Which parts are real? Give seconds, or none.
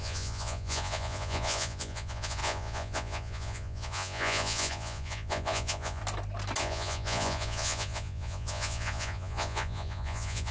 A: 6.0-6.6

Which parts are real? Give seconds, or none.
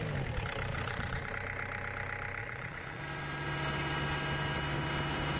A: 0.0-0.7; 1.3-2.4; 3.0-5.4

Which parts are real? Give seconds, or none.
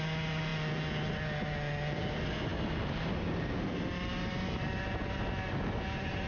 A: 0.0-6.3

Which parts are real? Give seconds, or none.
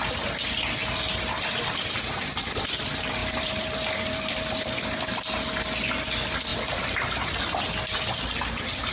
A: 0.0-3.2; 4.8-6.5; 8.0-8.9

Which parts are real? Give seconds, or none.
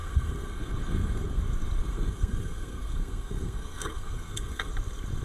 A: 1.4-1.8; 4.7-5.2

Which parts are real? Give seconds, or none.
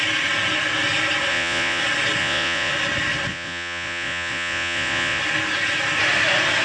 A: 0.0-1.3; 1.8-2.2; 2.7-3.3; 5.2-6.6